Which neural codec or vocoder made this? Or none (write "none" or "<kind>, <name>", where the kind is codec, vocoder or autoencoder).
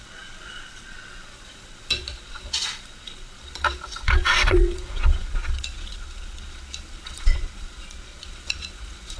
vocoder, Vocos